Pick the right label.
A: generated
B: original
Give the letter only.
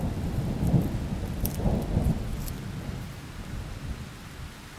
B